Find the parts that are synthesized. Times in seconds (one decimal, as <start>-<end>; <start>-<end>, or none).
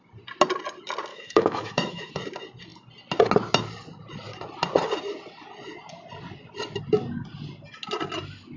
1.1-2.1